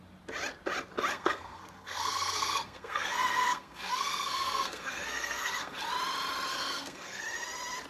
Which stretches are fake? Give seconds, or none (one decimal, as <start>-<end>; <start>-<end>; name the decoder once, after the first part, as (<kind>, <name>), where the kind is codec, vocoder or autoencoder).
1.1-5.8 (codec, SNAC); 6.5-7.2